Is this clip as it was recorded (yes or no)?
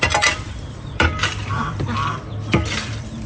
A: no